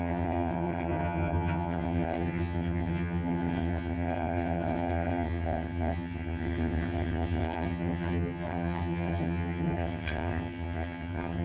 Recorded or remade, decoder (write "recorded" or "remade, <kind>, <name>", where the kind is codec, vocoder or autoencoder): remade, vocoder, HiFi-GAN